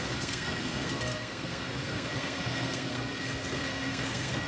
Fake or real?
fake